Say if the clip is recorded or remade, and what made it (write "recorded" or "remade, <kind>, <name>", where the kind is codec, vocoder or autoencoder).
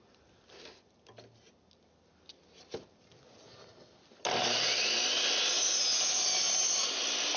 recorded